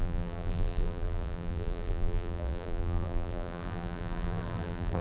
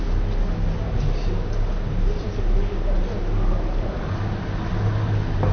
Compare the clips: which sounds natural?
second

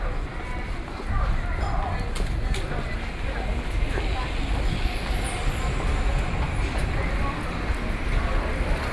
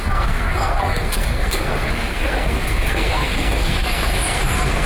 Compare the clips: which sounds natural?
first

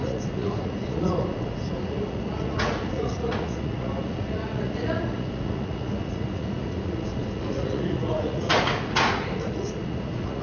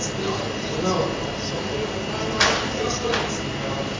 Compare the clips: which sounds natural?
second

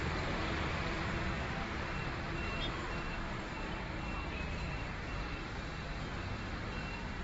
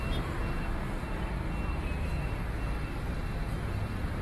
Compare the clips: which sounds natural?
second